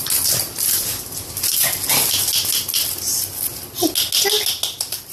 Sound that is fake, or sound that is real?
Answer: real